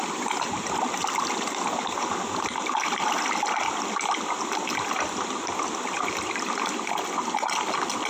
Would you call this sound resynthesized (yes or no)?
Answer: no